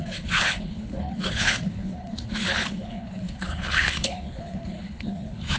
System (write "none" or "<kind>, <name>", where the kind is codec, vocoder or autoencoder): codec, HILCodec